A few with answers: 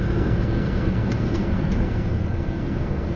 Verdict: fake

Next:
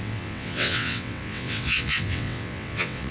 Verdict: fake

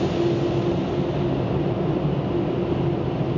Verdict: real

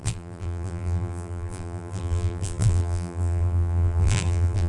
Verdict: fake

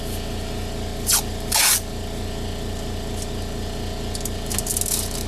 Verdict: real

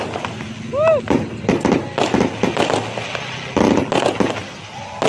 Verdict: real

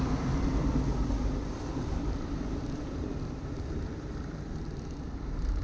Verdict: fake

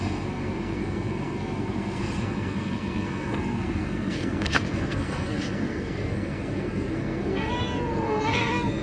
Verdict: fake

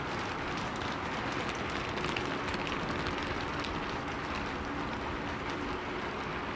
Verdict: fake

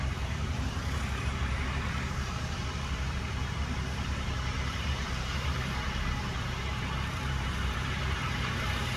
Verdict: fake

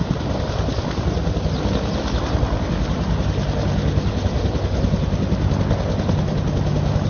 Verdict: real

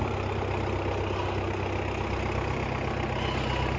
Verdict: real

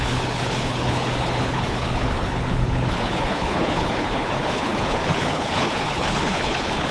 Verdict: fake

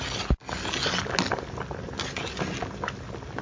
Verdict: real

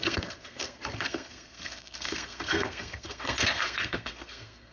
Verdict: fake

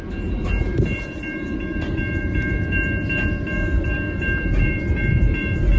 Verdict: fake